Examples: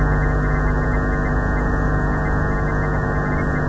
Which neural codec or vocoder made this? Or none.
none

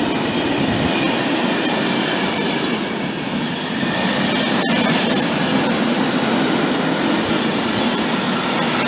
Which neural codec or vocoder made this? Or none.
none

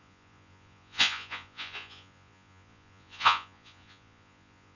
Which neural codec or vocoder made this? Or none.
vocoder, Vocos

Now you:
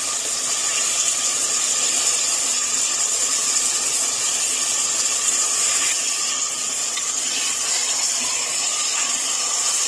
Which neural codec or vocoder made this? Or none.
vocoder, Vocos